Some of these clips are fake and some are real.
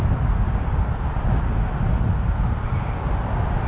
real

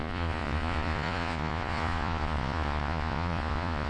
fake